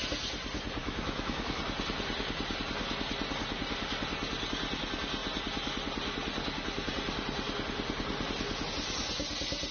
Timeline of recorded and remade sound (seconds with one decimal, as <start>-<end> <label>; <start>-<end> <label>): 0.0-0.8 recorded; 0.8-1.6 remade; 1.6-9.7 recorded